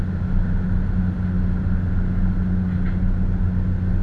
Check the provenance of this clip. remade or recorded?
recorded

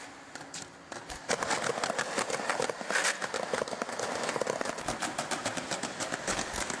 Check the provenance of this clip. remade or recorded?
recorded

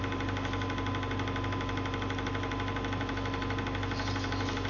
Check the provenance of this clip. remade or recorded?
recorded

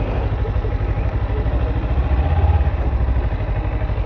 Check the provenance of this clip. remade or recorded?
recorded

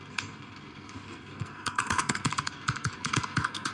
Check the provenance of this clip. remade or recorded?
remade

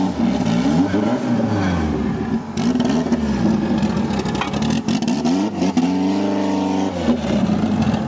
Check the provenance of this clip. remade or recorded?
recorded